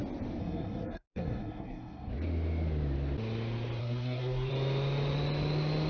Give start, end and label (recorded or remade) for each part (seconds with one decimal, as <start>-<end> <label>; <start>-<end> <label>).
0.0-0.4 recorded; 0.4-2.1 remade; 2.1-3.8 recorded; 3.8-4.5 remade; 4.5-5.9 recorded